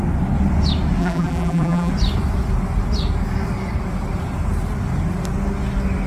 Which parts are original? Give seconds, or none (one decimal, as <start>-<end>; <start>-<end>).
0.0-1.0; 1.9-6.1